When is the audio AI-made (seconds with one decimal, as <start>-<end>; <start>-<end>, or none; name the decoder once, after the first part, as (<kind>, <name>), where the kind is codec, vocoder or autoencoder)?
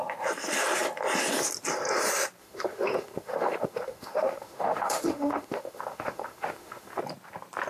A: 2.4-7.0 (autoencoder, DAC-VAE)